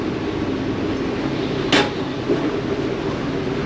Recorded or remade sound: recorded